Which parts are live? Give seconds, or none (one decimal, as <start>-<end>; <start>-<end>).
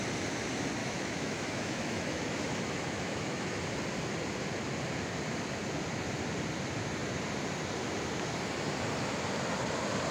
0.0-0.8; 3.6-10.1